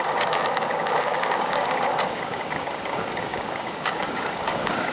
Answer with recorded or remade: remade